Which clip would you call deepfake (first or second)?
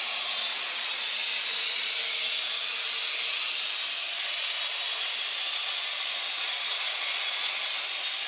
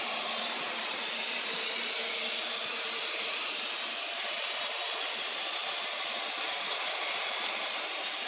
second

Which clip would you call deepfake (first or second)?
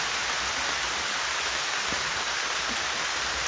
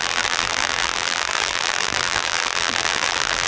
second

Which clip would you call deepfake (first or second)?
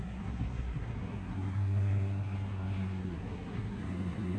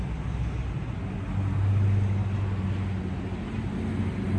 first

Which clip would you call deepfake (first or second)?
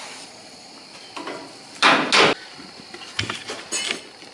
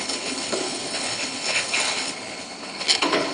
second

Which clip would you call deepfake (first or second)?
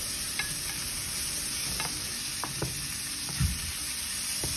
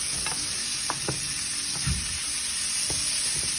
first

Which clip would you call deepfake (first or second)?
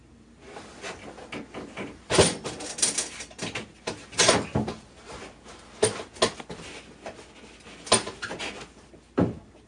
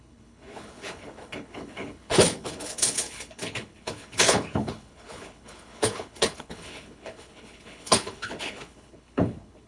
second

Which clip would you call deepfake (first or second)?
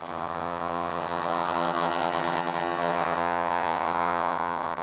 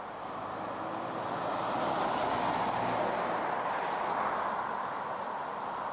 first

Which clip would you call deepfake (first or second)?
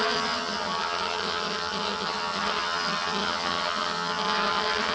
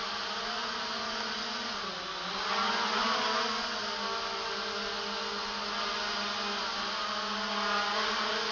first